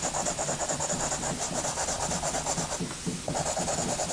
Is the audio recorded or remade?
recorded